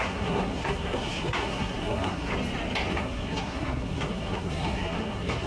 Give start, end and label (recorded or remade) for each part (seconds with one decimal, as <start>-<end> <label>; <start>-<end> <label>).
0.0-2.3 remade; 2.3-2.9 recorded; 2.9-5.5 remade